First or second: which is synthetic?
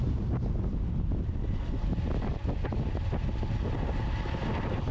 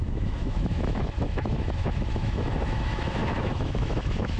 second